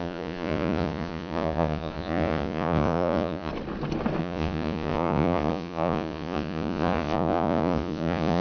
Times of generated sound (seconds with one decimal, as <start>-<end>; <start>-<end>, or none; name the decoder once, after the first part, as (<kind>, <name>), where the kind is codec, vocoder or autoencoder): 0.0-3.5 (vocoder, Vocos); 4.2-8.4